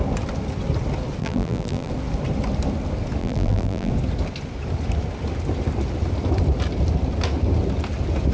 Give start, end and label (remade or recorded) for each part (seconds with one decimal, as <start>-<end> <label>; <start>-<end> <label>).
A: 0.0-1.2 recorded; 1.2-1.9 remade; 1.9-3.2 recorded; 3.2-3.9 remade; 3.9-8.3 recorded